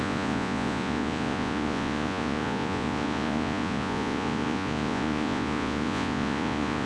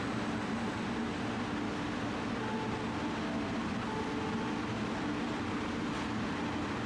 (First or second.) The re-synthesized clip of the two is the first